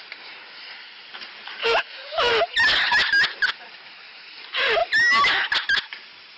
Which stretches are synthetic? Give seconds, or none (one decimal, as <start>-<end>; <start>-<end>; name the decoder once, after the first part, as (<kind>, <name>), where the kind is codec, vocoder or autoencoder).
1.6-2.3 (autoencoder, DAC-VAE)